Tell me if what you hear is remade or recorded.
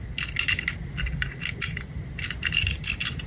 recorded